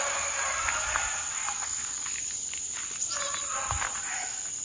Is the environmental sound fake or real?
real